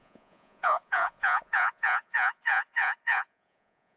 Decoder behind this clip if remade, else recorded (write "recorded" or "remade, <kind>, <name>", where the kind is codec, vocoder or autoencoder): remade, vocoder, Vocos